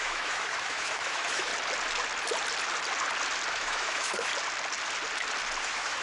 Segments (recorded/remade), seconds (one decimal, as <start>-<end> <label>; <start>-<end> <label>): 0.0-1.5 remade; 1.5-3.5 recorded; 3.5-4.3 remade; 4.3-5.6 recorded; 5.6-6.0 remade